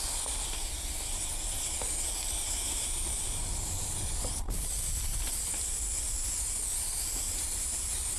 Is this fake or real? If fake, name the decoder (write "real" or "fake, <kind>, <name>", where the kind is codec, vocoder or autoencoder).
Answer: fake, vocoder, BigVGAN v2